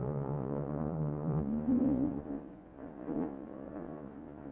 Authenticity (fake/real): fake